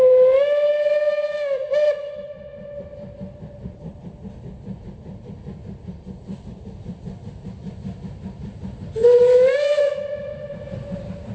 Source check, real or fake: real